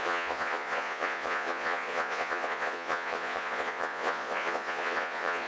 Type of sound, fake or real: fake